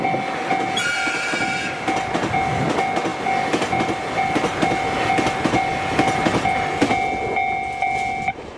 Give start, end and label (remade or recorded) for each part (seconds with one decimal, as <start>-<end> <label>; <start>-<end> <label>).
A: 0.0-8.6 recorded